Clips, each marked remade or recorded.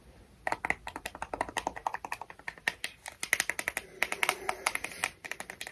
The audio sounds recorded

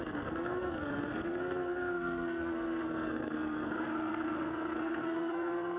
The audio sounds remade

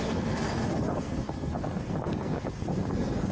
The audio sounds remade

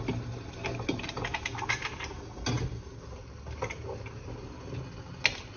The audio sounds recorded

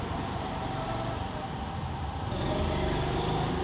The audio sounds recorded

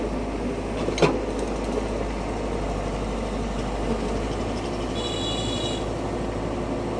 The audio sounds recorded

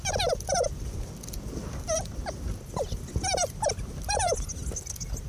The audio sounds recorded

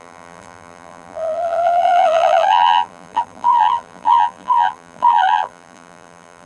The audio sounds remade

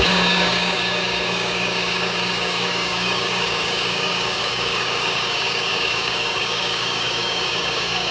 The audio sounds remade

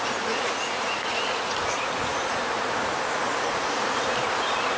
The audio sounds remade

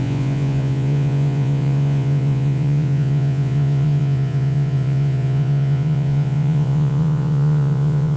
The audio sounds remade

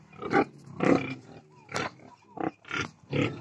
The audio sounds recorded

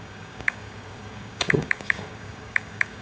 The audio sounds remade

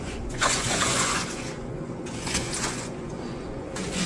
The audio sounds remade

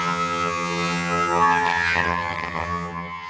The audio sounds remade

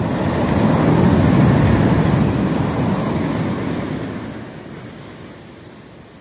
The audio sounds recorded